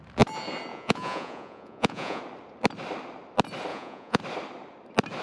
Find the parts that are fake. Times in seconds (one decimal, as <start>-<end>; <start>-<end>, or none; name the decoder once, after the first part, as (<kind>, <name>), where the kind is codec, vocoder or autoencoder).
0.7-2.2 (vocoder, Vocos); 3.7-4.2

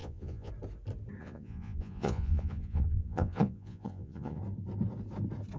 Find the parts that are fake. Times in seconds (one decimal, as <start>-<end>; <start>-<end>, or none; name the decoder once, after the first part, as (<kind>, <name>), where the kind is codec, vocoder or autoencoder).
0.0-0.5 (vocoder, Vocos); 1.2-4.4

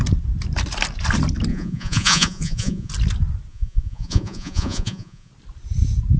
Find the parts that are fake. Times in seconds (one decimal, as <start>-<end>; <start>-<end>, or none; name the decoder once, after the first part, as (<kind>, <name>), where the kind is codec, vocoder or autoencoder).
1.5-2.9 (vocoder, Vocos); 3.5-5.3

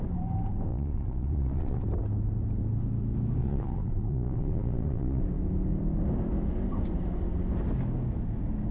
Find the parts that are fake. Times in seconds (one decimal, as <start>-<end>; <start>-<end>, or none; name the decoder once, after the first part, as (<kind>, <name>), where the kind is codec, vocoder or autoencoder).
0.7-1.8 (vocoder, Vocos); 3.4-5.2

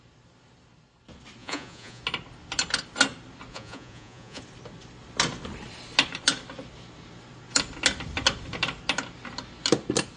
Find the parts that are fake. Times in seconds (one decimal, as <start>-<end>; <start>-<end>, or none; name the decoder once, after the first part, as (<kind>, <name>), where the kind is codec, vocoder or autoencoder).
1.4-2.0 (vocoder, Vocos); 3.5-4.4

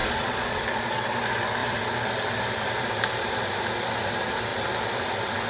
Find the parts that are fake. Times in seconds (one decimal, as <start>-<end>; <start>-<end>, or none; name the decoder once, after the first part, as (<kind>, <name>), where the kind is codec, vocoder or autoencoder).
0.0-1.0 (vocoder, Vocos)

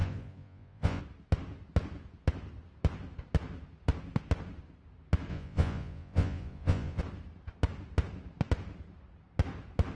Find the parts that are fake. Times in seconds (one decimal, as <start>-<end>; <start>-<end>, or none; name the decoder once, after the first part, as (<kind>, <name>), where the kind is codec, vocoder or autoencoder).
0.0-1.0 (vocoder, Vocos); 5.3-7.0